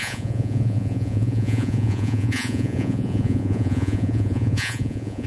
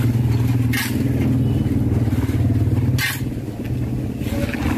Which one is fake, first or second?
first